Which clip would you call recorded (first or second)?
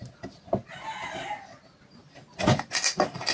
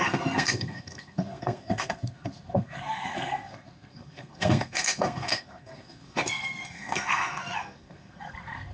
first